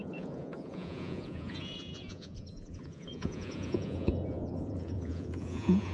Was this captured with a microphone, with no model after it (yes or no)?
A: no